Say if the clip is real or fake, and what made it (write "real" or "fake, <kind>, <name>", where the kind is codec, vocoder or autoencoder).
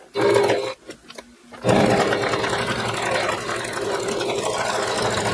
real